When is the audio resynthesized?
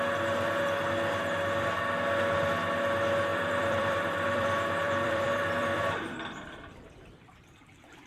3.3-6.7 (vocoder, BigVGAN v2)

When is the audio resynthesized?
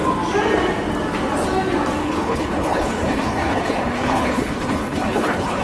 2.0-5.6 (codec, HILCodec)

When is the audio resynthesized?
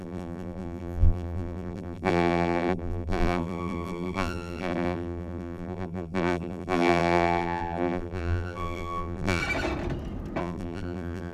0.0-9.4 (vocoder, BigVGAN v2); 10.4-11.3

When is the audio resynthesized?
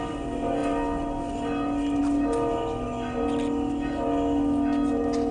none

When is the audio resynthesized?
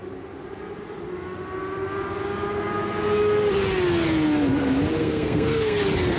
5.0-5.8 (codec, SNAC)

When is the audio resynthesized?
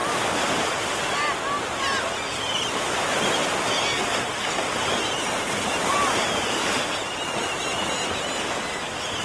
4.9-7.1 (vocoder, BigVGAN v2)